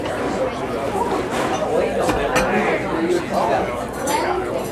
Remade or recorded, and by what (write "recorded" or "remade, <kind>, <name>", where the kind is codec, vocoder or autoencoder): recorded